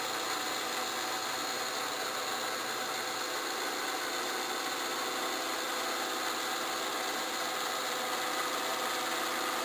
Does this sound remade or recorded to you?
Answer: recorded